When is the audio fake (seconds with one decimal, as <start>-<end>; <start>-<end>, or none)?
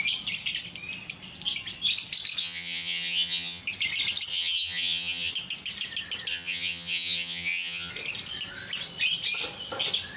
2.4-3.6; 4.3-5.3; 6.3-7.9